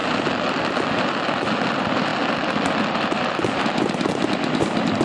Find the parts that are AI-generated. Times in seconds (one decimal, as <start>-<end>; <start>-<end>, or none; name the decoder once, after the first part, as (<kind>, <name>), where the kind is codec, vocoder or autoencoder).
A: none